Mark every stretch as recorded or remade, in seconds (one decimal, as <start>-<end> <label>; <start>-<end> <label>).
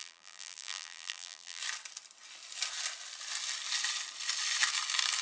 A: 0.0-1.6 remade; 1.6-5.2 recorded